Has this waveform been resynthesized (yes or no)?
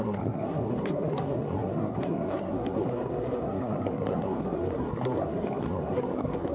yes